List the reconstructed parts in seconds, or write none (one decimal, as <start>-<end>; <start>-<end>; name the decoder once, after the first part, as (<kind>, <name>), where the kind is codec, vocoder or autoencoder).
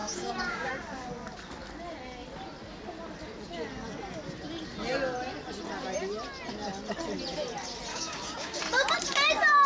0.0-0.7 (codec, DAC); 7.9-8.6